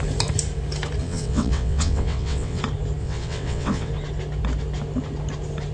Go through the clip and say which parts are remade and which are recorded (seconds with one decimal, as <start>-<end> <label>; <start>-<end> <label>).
0.0-1.0 recorded; 1.0-2.6 remade; 2.6-3.0 recorded; 3.0-3.9 remade; 3.9-5.7 recorded